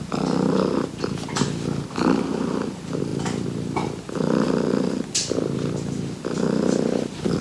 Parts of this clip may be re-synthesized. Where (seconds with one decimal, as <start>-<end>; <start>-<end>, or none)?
none